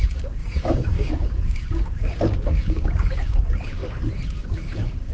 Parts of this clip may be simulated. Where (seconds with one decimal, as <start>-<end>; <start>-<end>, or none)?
0.0-3.8; 4.4-5.1